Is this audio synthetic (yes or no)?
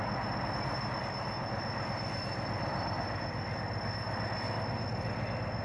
no